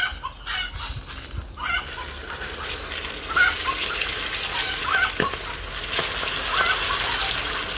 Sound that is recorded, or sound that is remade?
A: recorded